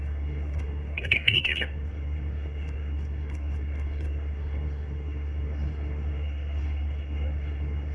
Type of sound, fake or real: fake